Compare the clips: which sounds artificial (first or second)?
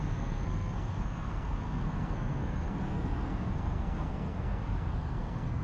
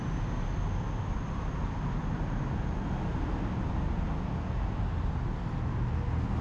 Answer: first